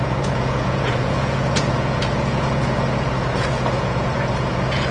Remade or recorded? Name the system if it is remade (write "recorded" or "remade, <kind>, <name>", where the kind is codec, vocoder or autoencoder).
remade, vocoder, Vocos